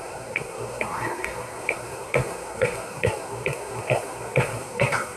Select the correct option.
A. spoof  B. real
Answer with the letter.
A